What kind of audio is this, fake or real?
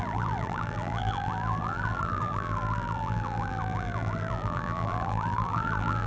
fake